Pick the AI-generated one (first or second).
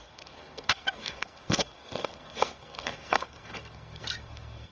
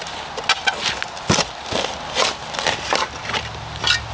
first